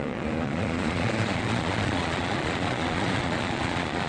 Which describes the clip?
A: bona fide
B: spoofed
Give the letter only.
B